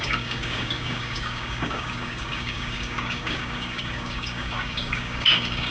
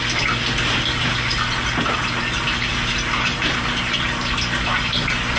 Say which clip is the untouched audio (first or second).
second